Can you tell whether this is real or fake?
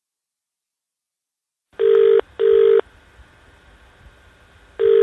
real